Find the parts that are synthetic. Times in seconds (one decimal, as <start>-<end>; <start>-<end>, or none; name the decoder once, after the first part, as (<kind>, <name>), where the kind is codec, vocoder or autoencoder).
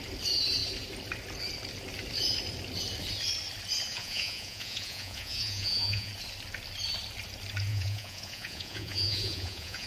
3.9-6.1 (vocoder, Vocos); 7.7-9.9